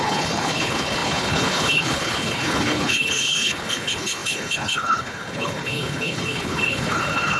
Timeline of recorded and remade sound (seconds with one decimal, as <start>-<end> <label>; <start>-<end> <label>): 0.0-7.4 remade